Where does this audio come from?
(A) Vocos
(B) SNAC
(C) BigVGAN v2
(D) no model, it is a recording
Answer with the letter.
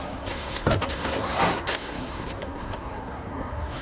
B